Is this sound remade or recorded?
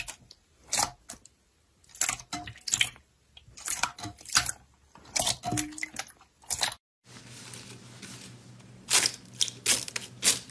recorded